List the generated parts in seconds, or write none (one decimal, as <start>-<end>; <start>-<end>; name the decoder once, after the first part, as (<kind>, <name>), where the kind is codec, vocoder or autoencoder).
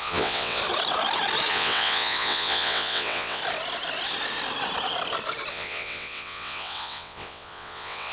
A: 0.0-0.6 (vocoder, WaveNeXt); 1.5-3.4; 5.5-8.1